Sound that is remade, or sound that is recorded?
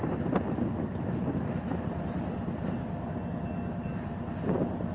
recorded